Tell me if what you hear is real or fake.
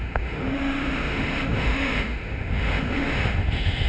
fake